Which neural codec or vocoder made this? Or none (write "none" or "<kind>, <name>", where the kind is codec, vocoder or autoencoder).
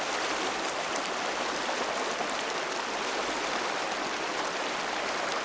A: none